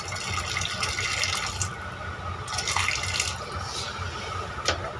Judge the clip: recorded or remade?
recorded